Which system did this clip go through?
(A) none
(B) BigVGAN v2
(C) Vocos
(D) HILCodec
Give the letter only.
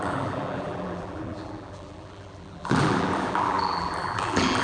B